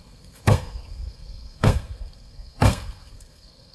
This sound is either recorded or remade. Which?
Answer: remade